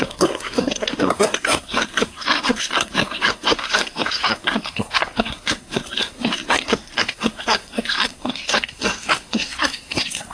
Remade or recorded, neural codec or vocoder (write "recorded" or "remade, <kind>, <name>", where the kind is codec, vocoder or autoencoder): remade, codec, SNAC